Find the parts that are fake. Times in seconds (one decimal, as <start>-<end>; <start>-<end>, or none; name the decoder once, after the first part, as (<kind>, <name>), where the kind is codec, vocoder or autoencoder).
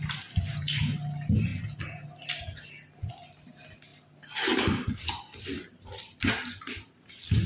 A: none